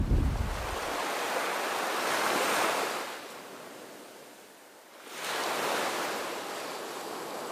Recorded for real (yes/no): yes